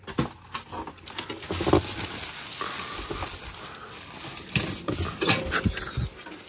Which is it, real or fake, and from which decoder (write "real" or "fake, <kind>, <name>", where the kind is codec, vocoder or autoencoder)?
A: real